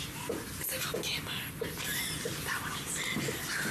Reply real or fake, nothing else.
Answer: real